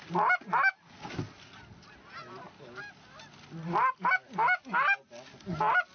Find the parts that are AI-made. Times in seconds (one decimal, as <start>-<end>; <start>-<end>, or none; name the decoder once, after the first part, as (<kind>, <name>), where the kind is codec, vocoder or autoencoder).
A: none